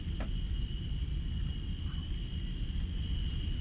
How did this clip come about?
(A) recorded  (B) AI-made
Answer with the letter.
B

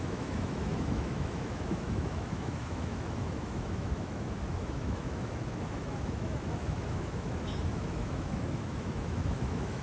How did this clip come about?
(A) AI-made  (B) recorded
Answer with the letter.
A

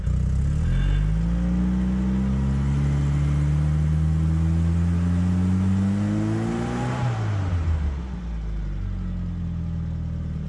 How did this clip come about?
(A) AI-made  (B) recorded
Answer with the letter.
B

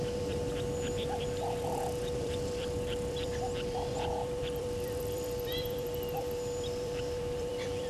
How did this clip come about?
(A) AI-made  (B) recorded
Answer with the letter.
A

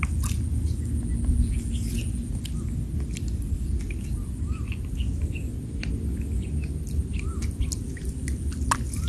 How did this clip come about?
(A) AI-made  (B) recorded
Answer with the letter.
B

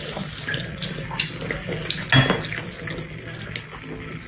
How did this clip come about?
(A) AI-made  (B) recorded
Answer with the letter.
B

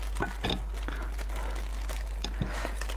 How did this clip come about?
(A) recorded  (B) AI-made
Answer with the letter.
A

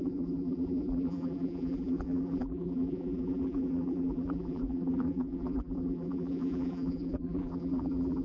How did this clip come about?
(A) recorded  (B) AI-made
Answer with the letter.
B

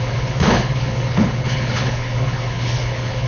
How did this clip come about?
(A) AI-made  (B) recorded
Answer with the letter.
A